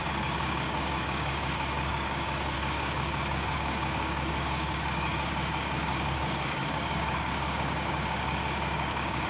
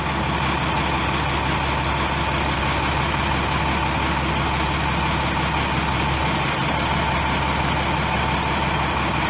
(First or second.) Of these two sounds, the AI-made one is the first